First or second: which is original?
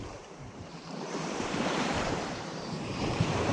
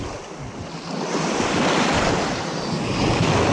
second